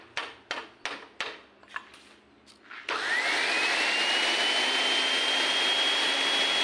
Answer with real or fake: real